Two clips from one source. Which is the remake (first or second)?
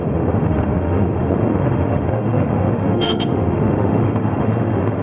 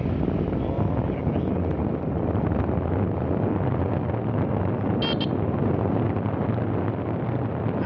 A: first